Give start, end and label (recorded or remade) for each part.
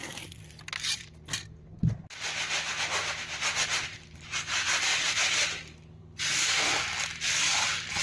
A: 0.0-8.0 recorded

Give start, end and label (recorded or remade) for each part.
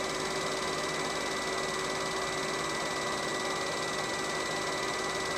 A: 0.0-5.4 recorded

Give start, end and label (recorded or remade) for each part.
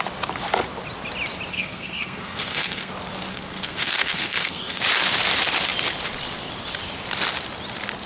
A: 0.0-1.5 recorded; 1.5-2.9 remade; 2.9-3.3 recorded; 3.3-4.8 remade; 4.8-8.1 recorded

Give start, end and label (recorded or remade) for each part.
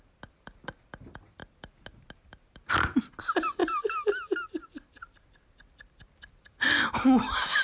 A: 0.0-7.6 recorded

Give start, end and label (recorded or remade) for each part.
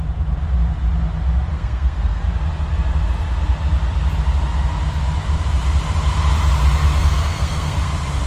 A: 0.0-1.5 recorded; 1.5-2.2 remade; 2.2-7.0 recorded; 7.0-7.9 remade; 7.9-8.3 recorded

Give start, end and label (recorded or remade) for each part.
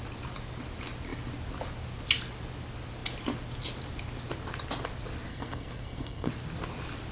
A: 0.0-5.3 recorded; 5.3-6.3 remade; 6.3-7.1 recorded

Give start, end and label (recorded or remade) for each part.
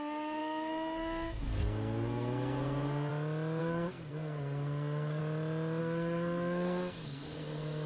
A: 0.0-3.1 remade; 3.1-3.6 recorded; 3.6-5.2 remade; 5.2-5.8 recorded; 5.8-7.9 remade